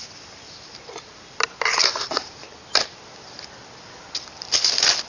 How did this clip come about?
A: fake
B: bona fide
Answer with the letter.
B